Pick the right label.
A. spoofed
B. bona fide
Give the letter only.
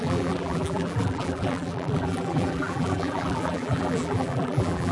A